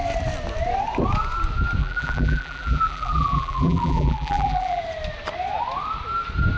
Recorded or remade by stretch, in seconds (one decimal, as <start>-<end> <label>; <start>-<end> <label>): 0.0-1.8 recorded; 1.8-4.8 remade; 4.8-6.6 recorded